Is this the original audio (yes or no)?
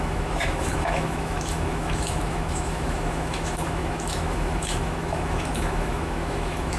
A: no